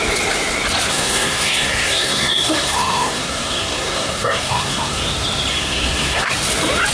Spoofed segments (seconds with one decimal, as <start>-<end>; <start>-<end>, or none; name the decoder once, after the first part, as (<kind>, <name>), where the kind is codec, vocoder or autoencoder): 0.9-5.0 (codec, SNAC); 5.5-6.3